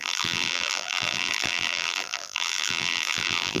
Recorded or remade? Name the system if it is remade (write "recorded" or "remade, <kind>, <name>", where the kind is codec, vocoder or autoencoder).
remade, vocoder, BigVGAN v2